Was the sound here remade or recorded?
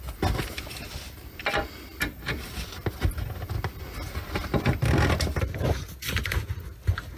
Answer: recorded